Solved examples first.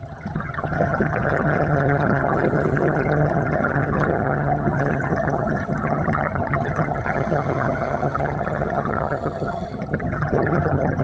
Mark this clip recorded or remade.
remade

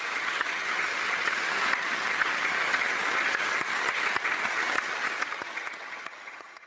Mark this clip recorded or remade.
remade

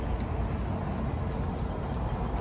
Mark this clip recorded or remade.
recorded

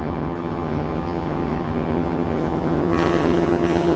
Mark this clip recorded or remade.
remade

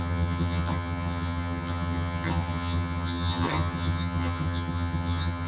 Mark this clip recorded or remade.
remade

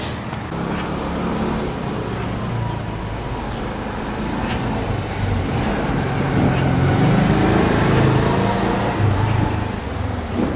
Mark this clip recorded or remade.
recorded